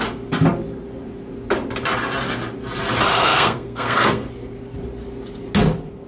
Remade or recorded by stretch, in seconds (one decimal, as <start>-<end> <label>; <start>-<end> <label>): 0.0-3.1 recorded; 3.1-4.3 remade; 4.3-6.1 recorded